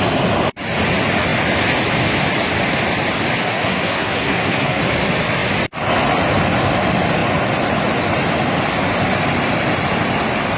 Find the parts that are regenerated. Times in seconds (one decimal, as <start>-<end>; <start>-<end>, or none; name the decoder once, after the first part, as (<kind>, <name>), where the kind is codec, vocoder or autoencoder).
3.4-4.8 (codec, SNAC)